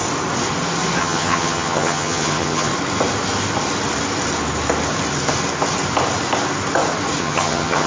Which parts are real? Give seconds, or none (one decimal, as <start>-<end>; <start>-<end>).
0.0-1.0; 2.7-7.2